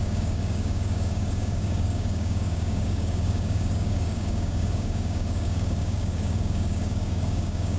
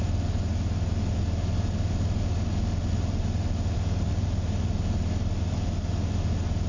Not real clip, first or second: first